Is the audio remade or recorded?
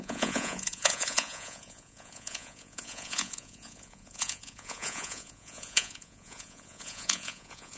remade